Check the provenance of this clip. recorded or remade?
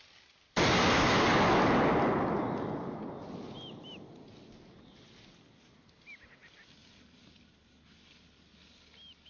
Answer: recorded